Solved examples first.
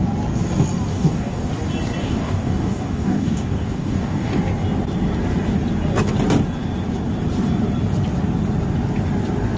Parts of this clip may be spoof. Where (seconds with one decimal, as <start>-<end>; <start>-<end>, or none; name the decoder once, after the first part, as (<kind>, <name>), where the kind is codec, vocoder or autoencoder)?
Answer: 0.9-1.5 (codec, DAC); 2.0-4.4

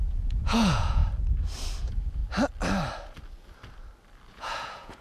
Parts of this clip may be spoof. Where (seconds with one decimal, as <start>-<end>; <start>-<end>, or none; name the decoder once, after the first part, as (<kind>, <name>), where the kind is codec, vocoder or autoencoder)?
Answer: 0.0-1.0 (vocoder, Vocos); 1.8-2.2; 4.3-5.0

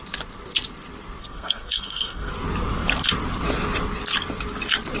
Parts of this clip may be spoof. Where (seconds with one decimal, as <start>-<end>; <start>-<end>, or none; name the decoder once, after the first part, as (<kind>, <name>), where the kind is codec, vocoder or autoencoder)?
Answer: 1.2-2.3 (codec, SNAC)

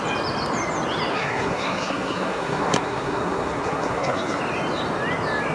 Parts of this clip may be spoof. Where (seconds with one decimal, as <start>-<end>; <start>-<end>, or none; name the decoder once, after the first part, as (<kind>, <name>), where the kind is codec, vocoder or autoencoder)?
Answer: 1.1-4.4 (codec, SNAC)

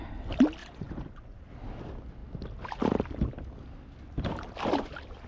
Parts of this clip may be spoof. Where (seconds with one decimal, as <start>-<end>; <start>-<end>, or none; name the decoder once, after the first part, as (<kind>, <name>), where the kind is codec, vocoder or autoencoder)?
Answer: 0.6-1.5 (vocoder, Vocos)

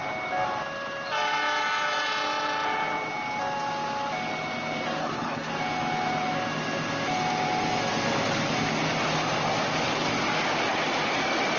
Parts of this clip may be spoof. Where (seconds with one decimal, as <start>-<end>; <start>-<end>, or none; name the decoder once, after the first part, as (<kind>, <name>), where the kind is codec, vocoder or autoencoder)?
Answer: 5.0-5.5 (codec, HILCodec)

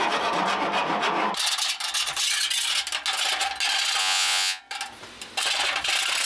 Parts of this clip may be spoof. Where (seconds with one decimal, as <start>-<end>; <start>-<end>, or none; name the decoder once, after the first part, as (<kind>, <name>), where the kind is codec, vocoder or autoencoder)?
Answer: 4.0-4.6 (vocoder, Vocos)

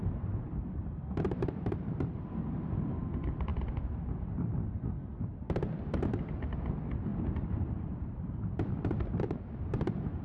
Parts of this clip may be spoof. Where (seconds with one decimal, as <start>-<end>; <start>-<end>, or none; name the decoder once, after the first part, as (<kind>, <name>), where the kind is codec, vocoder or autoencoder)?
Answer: 0.0-2.5 (vocoder, BigVGAN v2); 7.1-9.3